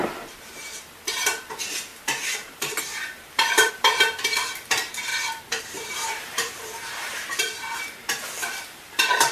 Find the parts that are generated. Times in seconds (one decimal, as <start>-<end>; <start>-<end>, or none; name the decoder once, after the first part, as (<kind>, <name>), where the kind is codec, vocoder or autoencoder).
0.0-5.1 (vocoder, BigVGAN v2); 5.6-9.3

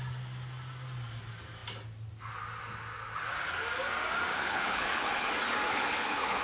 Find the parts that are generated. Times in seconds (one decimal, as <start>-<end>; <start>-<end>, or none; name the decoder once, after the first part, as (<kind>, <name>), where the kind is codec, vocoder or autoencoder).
4.3-5.3 (codec, HILCodec); 5.7-6.4

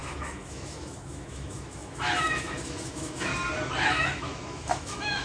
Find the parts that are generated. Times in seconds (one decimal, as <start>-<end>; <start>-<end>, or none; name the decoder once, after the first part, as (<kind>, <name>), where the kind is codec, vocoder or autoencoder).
0.0-3.3 (autoencoder, DAC-VAE); 3.9-5.2

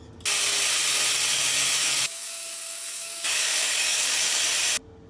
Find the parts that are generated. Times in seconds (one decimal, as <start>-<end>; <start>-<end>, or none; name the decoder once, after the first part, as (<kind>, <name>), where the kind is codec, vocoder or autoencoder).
1.3-4.4 (codec, DAC)

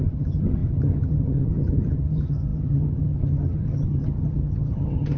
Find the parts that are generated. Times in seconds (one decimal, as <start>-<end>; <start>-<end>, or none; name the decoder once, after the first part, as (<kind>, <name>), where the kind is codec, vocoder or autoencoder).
0.0-5.2 (vocoder, HiFi-GAN)

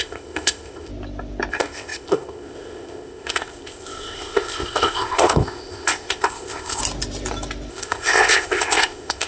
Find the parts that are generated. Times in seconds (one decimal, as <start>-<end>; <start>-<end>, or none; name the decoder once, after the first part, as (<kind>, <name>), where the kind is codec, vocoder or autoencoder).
0.0-0.9 (codec, ZipCodec); 1.5-6.8; 7.7-9.3

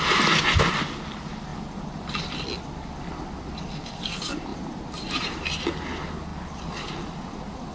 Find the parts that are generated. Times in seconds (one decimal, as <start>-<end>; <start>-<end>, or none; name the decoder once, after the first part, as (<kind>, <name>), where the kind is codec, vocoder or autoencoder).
none